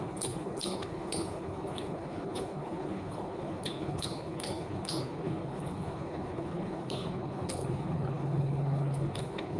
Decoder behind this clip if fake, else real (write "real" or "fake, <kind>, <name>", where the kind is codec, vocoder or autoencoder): fake, codec, HILCodec